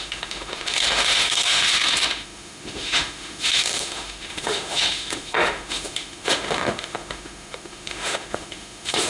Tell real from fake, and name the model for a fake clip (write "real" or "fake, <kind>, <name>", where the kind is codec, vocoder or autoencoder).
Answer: fake, autoencoder, DAC-VAE